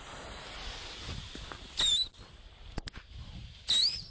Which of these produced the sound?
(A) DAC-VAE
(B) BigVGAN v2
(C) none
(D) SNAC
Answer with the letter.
C